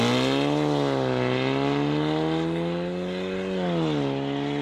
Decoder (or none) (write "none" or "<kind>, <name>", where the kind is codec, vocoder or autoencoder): none